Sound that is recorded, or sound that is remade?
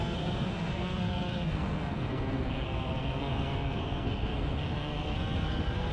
remade